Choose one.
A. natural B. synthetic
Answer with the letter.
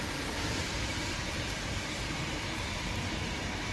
B